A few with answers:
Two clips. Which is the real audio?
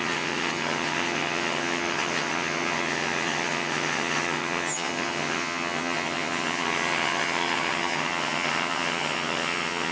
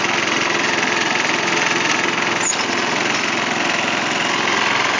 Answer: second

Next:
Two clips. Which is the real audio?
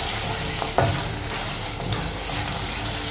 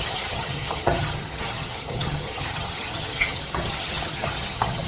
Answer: first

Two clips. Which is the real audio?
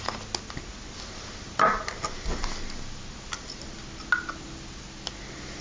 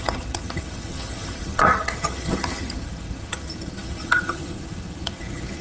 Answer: first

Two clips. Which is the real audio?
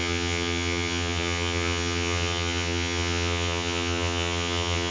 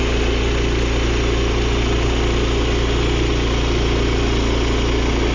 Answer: second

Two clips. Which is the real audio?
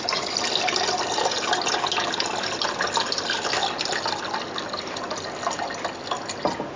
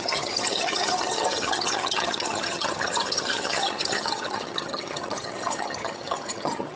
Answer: first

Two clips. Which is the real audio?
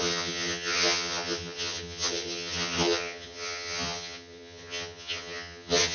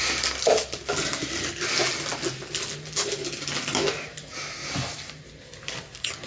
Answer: second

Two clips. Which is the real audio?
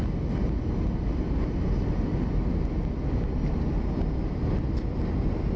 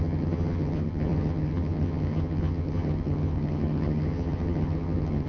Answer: first